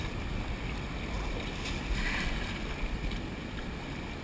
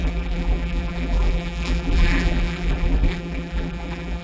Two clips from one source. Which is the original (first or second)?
first